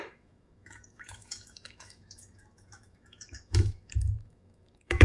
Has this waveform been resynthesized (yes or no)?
yes